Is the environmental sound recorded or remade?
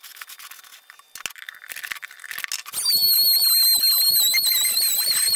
recorded